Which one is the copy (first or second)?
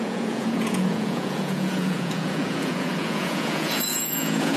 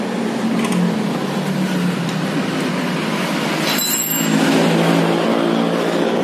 first